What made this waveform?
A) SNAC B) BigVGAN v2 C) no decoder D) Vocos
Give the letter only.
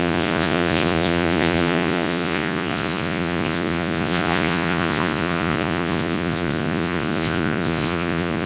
D